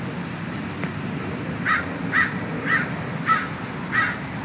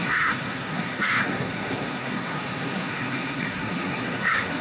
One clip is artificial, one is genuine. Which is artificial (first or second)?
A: second